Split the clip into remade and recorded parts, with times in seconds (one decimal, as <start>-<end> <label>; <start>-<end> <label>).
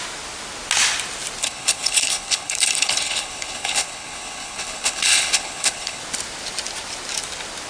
0.0-1.4 recorded; 1.4-6.0 remade; 6.0-7.7 recorded